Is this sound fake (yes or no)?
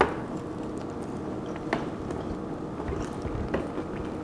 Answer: no